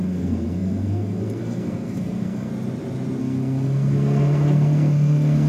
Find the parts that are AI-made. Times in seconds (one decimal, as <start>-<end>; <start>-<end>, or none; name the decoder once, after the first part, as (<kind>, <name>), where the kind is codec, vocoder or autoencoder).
0.0-2.5 (codec, SNAC); 3.2-5.5